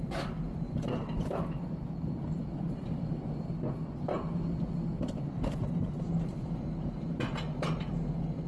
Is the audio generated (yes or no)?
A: no